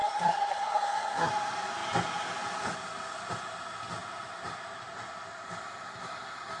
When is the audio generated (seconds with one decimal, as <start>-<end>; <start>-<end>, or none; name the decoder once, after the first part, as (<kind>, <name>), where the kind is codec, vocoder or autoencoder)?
0.0-1.3 (codec, SNAC)

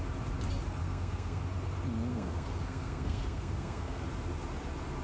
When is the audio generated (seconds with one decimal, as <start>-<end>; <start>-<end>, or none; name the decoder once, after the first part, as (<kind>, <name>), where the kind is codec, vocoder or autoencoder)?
0.8-1.4 (codec, SNAC); 2.1-4.0

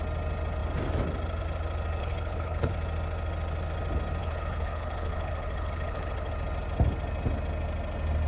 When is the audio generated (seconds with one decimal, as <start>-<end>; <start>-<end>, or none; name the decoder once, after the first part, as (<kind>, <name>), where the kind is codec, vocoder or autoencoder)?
2.0-2.7 (codec, HILCodec); 4.2-6.3